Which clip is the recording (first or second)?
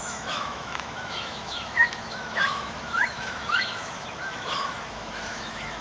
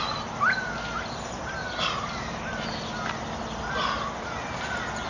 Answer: second